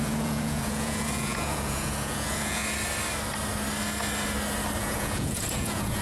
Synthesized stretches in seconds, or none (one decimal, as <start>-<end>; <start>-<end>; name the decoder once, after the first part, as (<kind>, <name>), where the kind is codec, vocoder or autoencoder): 0.0-2.6 (vocoder, Vocos); 4.8-6.0